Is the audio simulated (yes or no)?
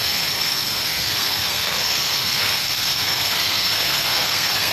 yes